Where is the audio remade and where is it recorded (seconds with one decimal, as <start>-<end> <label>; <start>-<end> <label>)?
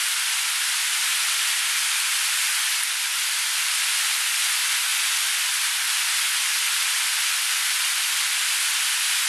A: 0.0-9.3 recorded